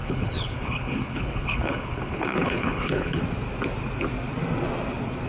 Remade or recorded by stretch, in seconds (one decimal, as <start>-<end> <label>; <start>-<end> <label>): 0.0-3.2 remade; 3.2-5.3 recorded